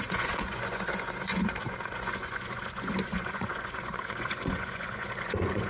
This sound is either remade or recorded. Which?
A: remade